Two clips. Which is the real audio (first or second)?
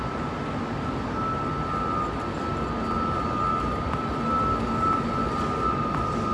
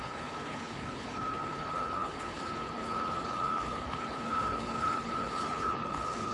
first